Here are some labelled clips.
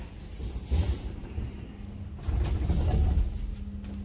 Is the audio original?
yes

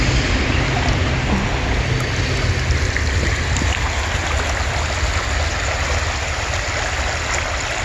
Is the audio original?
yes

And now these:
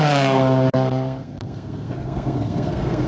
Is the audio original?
no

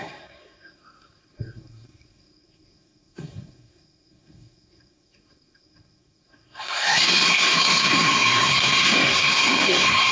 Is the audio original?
no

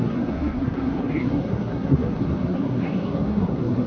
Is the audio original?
no